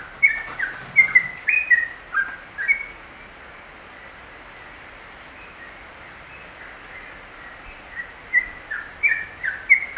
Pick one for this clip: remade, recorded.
recorded